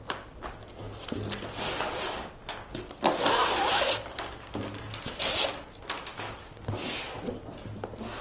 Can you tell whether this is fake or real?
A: real